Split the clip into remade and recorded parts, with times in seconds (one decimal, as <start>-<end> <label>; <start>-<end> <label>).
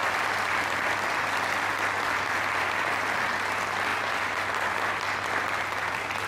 0.0-1.7 remade; 1.7-3.9 recorded; 3.9-4.4 remade; 4.4-6.3 recorded